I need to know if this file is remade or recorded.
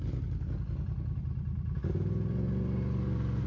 recorded